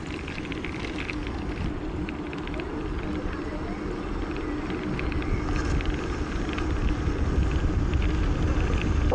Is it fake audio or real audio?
real